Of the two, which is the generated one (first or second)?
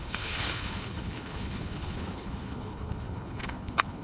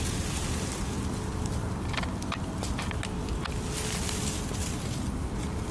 first